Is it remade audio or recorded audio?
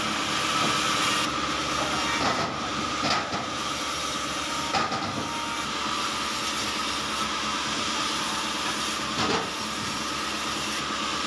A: recorded